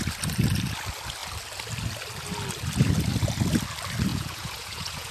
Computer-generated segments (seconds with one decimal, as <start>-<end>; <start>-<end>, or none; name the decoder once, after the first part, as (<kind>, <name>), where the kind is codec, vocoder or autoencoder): 4.1-5.1 (vocoder, Vocos)